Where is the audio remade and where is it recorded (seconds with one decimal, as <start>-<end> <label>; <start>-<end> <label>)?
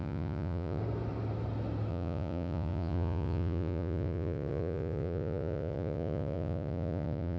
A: 0.0-0.8 remade; 0.8-1.9 recorded; 1.9-7.4 remade